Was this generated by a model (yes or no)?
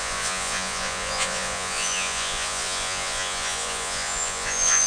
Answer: yes